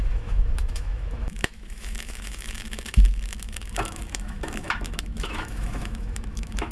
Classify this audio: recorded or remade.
remade